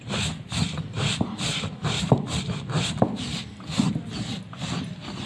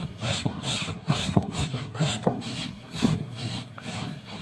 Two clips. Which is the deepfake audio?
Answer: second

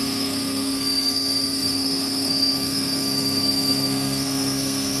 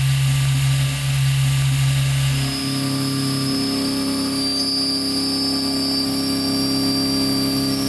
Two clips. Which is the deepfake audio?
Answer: first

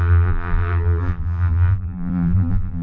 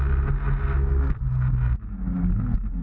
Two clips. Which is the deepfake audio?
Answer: first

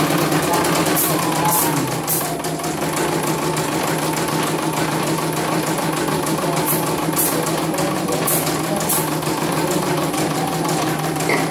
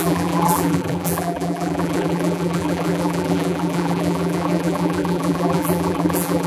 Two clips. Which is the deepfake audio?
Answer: second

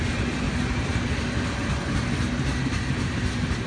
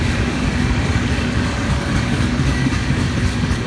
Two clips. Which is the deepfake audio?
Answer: second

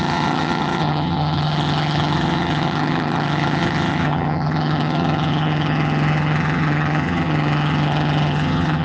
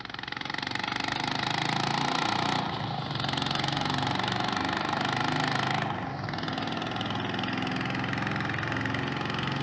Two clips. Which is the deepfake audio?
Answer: first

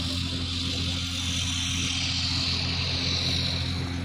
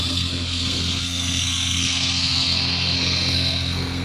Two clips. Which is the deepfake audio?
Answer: second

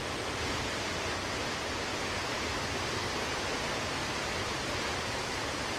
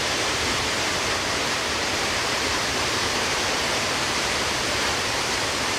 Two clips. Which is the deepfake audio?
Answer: second